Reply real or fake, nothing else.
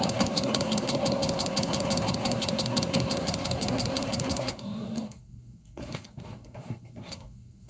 fake